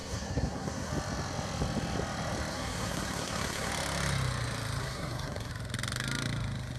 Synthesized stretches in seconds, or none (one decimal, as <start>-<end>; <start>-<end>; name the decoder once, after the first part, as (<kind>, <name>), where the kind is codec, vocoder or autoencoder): 0.0-0.9 (codec, SNAC); 2.5-3.7; 4.8-5.5